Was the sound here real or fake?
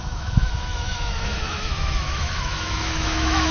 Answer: fake